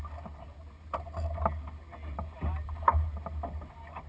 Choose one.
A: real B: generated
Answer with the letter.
A